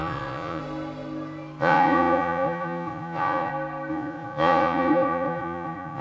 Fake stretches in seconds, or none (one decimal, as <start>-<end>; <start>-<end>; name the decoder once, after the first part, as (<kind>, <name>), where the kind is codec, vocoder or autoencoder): 0.0-0.6 (vocoder, Vocos); 1.6-3.5; 3.9-6.0